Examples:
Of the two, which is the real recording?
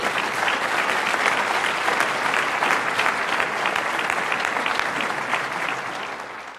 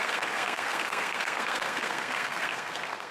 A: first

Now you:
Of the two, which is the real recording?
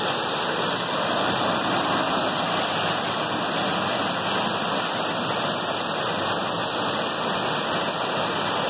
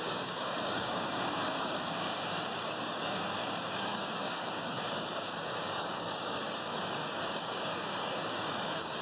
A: first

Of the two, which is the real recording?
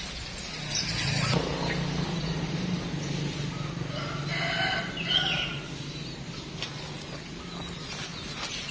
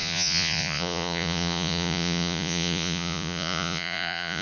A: first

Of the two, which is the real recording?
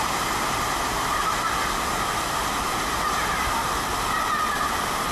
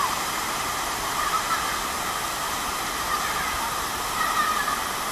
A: first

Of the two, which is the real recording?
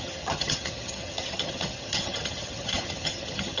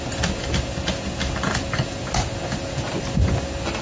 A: second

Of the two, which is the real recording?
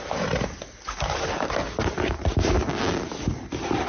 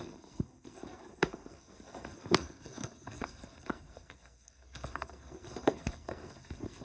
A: first